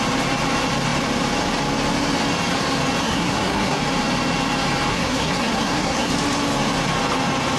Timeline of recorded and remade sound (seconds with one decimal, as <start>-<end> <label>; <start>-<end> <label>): 0.0-3.0 recorded; 3.0-3.8 remade; 3.8-4.9 recorded; 4.9-6.1 remade; 6.1-7.6 recorded